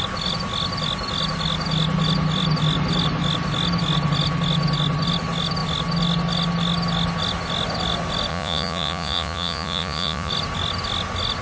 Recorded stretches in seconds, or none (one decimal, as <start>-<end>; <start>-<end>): 0.0-8.3; 10.3-11.4